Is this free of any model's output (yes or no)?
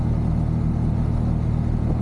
yes